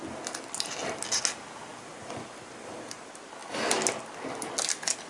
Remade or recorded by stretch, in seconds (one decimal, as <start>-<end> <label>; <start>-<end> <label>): 0.0-5.1 recorded